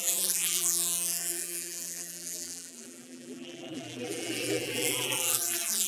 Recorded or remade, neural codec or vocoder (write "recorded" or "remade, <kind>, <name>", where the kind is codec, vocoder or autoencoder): remade, vocoder, BigVGAN v2